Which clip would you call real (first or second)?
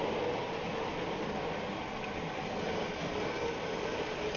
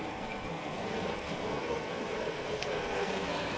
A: first